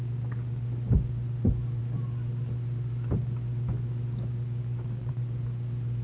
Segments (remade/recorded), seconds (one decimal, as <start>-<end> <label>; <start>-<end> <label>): 0.0-6.0 recorded